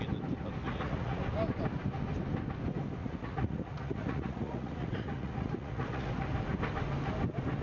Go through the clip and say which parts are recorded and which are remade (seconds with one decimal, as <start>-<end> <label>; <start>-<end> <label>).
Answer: 0.0-0.6 recorded; 0.6-1.2 remade; 1.2-3.0 recorded; 3.0-6.1 remade; 6.1-7.6 recorded

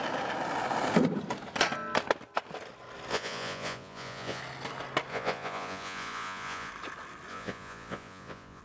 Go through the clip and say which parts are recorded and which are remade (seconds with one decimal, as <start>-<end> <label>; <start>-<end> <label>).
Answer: 0.0-3.1 recorded; 3.1-4.4 remade; 4.4-5.1 recorded; 5.1-6.7 remade; 6.7-7.3 recorded; 7.3-8.6 remade